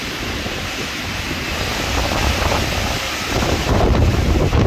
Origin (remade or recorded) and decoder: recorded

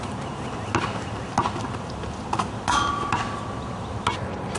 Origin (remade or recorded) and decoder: recorded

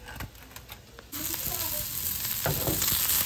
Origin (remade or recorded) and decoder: recorded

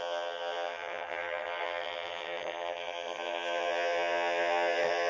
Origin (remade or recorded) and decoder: remade, vocoder, HiFi-GAN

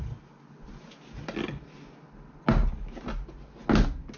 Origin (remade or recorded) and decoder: recorded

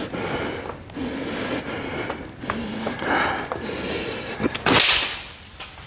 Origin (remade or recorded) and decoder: recorded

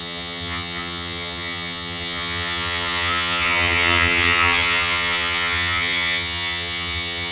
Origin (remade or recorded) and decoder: remade, vocoder, HiFi-GAN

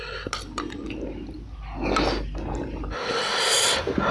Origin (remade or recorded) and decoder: recorded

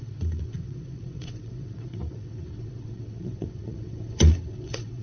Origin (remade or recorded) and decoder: remade, vocoder, WaveNeXt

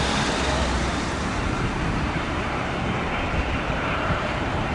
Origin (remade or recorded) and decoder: remade, vocoder, BigVGAN v2